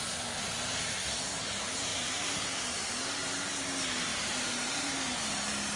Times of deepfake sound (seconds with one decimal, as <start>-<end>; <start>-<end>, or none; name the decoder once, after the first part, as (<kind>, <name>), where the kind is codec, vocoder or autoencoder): 1.9-2.4 (vocoder, BigVGAN v2); 4.1-4.9